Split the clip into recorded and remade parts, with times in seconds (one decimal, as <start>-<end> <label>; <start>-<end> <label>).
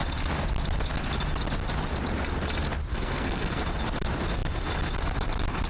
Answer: 0.0-2.9 recorded; 2.9-3.6 remade; 3.6-5.7 recorded